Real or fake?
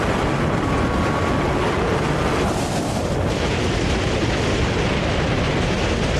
real